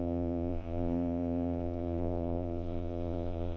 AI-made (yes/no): yes